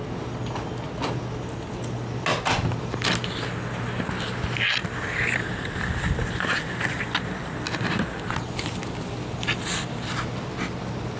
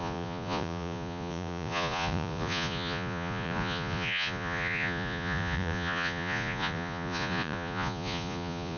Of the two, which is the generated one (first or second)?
second